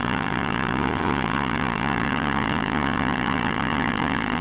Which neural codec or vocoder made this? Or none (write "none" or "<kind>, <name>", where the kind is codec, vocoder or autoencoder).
vocoder, Vocos